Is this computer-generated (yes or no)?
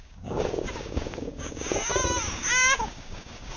yes